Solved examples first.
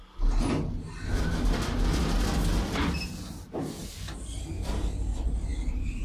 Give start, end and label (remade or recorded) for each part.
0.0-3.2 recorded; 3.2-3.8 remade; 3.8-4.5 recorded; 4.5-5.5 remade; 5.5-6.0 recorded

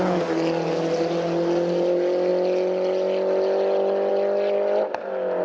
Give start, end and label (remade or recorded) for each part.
0.0-5.4 recorded

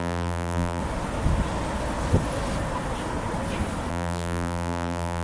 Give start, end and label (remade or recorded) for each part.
0.0-0.8 remade; 0.8-3.9 recorded; 3.9-5.2 remade

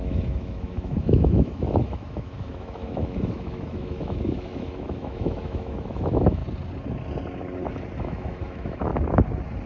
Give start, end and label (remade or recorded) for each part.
0.0-6.4 remade; 6.4-8.0 recorded; 8.0-8.9 remade; 8.9-9.7 recorded

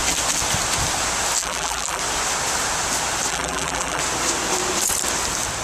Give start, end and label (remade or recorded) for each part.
0.0-1.4 recorded; 1.4-2.0 remade; 2.0-3.3 recorded; 3.3-4.0 remade; 4.0-5.6 recorded

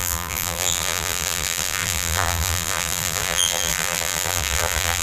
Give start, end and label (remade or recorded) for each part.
0.0-5.0 remade

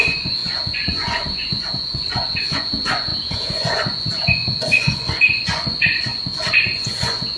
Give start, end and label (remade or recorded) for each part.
0.0-7.4 remade

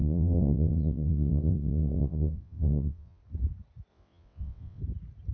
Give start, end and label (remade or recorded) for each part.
0.0-3.2 remade; 3.2-3.9 recorded; 3.9-4.8 remade; 4.8-5.3 recorded